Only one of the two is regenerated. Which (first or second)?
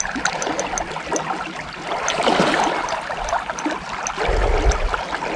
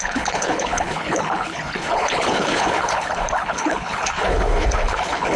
second